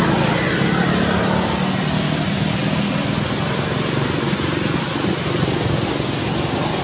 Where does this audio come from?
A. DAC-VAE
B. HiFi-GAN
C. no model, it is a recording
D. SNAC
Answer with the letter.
C